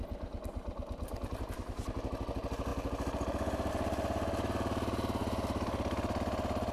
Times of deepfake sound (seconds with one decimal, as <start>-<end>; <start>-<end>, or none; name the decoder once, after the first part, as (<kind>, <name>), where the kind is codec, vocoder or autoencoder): 5.2-6.2 (vocoder, BigVGAN v2)